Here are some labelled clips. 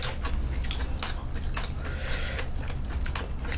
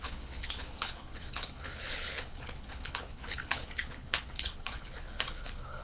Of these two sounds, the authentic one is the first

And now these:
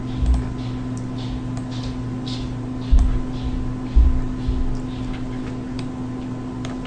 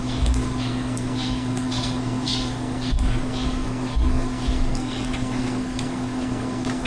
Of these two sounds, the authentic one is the first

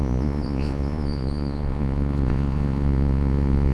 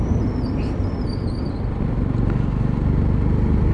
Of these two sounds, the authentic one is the second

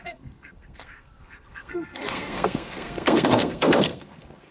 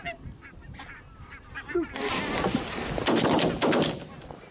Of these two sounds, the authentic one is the second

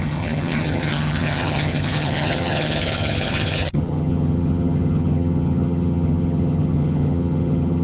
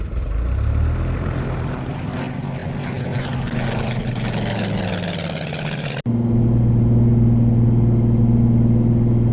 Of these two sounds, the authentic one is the second